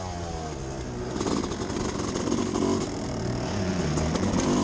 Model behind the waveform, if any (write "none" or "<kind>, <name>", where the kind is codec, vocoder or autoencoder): none